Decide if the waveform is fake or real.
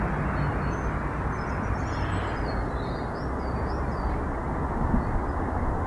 real